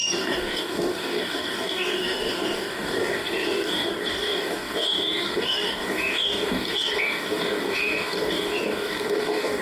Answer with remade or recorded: remade